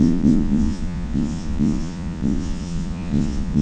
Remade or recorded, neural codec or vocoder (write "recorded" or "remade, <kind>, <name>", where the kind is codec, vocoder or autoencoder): remade, vocoder, Vocos